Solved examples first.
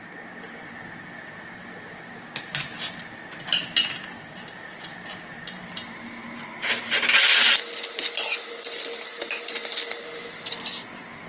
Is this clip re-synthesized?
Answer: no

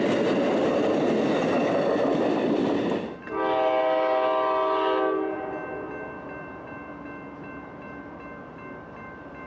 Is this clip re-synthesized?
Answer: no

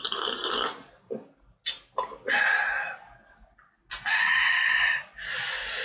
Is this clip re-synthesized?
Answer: no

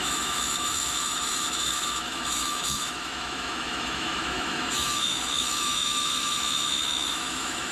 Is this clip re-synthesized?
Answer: yes